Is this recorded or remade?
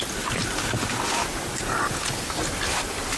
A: recorded